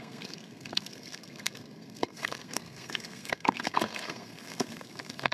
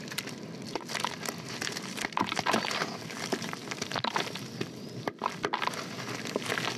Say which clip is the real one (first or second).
second